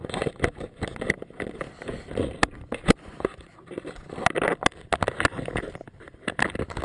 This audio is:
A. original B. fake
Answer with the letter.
A